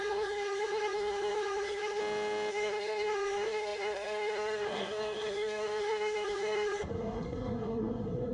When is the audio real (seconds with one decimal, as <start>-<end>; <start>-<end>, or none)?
2.0-2.5